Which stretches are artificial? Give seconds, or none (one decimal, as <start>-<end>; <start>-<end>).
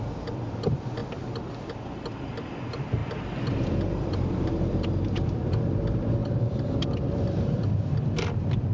0.0-1.0; 2.2-3.0; 3.9-8.7